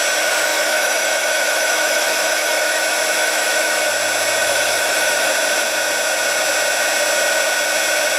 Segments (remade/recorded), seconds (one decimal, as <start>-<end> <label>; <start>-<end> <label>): 0.0-0.5 recorded; 0.5-2.8 remade; 2.8-3.2 recorded; 3.2-3.9 remade; 3.9-4.4 recorded; 4.4-5.3 remade; 5.3-8.2 recorded